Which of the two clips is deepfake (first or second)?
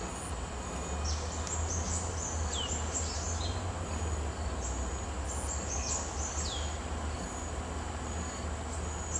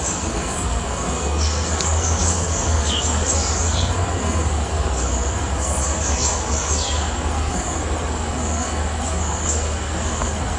second